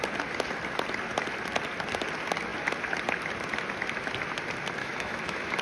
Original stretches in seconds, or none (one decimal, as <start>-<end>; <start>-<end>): 0.0-4.8